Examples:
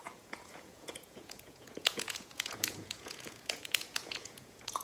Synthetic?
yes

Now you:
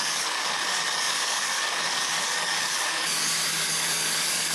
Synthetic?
yes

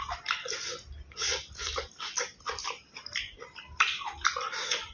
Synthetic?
no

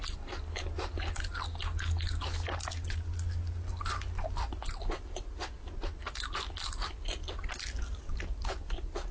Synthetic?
no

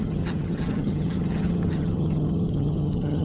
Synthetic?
yes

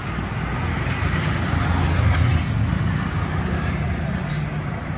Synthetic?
no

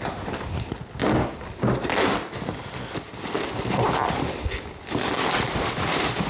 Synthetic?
no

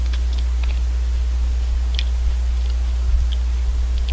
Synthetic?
no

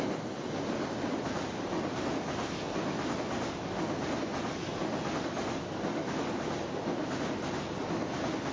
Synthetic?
no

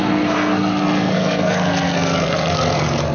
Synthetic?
yes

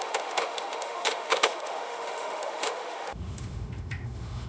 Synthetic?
yes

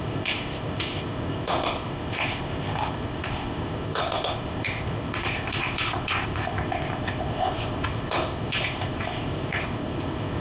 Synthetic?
yes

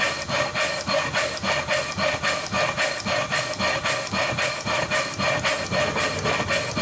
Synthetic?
no